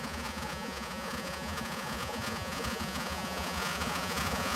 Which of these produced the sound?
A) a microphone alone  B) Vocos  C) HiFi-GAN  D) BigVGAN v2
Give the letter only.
B